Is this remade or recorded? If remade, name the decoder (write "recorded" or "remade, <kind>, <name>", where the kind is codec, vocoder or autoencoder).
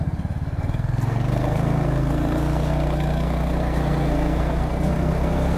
remade, codec, SNAC